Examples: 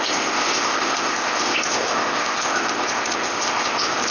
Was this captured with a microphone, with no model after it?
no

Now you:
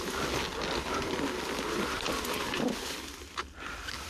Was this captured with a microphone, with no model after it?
yes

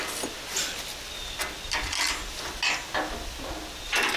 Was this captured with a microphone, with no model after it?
yes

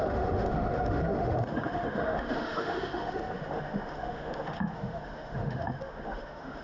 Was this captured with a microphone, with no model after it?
no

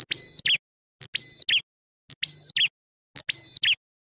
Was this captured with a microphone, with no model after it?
yes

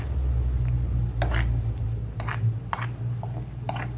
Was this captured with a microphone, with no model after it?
yes